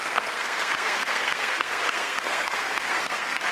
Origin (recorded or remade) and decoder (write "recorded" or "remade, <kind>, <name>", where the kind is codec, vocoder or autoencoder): remade, codec, SNAC